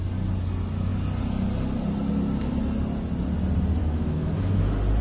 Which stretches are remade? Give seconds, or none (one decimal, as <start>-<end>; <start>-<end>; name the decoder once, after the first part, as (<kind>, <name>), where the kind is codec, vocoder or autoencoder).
3.8-4.6 (autoencoder, DAC-VAE)